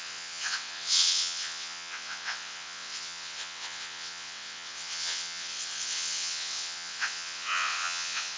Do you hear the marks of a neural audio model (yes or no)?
yes